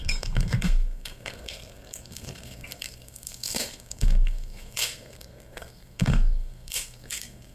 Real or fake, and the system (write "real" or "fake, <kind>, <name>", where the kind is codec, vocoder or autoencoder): fake, codec, SNAC